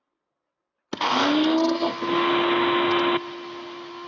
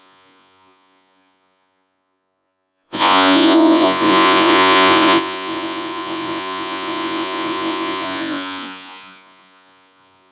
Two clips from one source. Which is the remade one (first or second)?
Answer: second